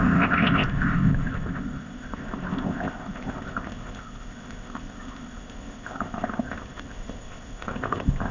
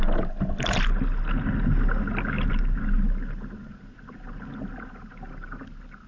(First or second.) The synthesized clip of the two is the first